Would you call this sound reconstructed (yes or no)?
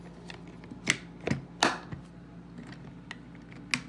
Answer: no